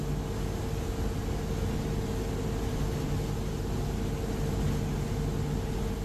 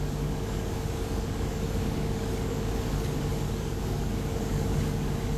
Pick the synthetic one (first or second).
second